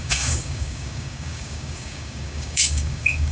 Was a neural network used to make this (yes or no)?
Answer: yes